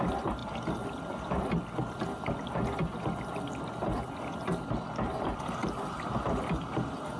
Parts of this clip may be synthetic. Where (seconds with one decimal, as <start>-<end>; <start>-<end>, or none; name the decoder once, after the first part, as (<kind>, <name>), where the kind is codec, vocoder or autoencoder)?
none